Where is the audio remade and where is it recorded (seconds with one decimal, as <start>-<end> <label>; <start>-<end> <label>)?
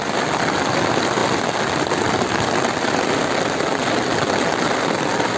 0.0-5.4 recorded